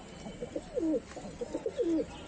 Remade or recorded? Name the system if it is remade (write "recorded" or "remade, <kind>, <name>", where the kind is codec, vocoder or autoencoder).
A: recorded